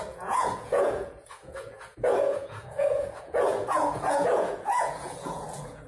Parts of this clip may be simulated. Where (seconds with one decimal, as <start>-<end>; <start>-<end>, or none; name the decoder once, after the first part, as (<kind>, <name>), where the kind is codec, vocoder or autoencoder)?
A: 0.0-5.9 (vocoder, Vocos)